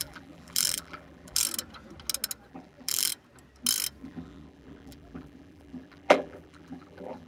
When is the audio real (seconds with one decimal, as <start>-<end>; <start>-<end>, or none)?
1.4-2.5; 3.1-4.0

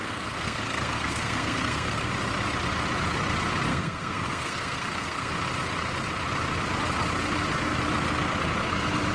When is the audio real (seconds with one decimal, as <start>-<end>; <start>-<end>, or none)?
2.1-3.7; 5.3-9.1